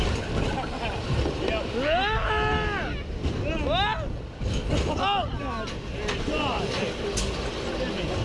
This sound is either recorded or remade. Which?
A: recorded